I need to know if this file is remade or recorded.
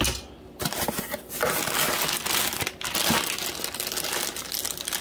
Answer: recorded